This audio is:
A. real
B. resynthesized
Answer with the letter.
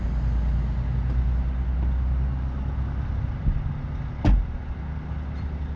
A